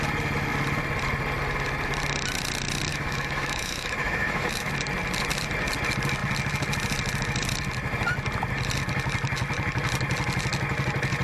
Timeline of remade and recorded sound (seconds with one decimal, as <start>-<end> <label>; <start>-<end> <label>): 0.0-2.9 recorded; 2.9-4.7 remade; 4.7-11.2 recorded